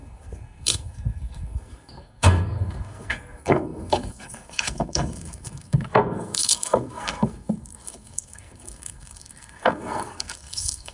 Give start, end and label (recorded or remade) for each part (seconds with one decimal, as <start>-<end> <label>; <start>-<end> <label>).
0.0-10.9 remade